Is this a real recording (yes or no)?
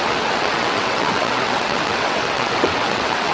no